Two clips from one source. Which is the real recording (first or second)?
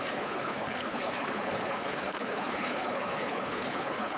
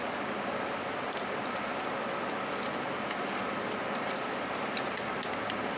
second